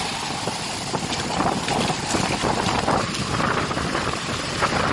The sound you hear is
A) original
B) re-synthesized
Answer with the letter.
A